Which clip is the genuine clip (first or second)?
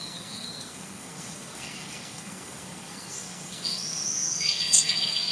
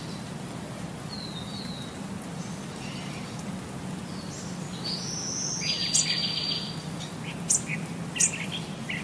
second